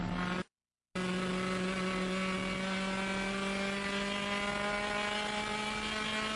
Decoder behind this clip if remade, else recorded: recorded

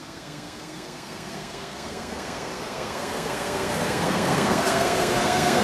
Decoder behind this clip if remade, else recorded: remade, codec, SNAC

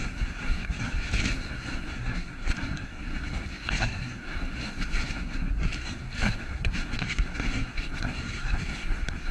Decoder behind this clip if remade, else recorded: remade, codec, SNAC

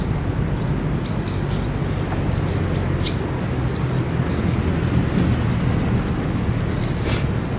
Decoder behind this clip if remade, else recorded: recorded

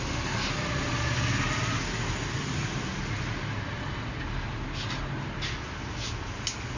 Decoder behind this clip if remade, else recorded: recorded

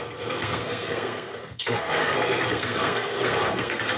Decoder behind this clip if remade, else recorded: remade, codec, SNAC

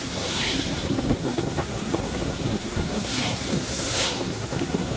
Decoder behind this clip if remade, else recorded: remade, codec, SNAC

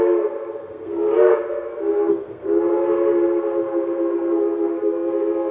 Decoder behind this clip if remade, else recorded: remade, codec, SNAC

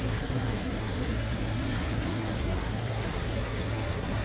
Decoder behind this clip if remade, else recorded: remade, codec, SNAC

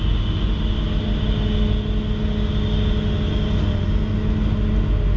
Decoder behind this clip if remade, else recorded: recorded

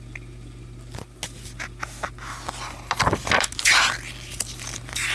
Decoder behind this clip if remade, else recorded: recorded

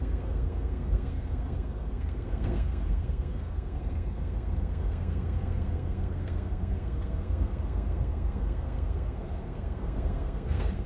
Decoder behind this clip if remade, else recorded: remade, codec, SNAC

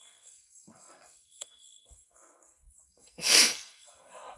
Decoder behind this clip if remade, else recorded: remade, codec, SNAC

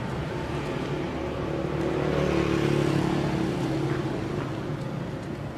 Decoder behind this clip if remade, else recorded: recorded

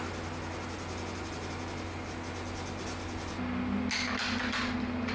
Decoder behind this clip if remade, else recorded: recorded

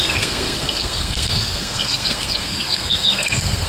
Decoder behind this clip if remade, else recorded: remade, codec, SNAC